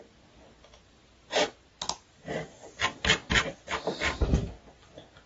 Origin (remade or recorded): recorded